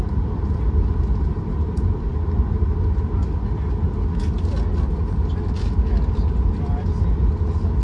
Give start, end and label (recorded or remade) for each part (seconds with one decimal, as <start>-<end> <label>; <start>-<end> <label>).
0.0-7.8 recorded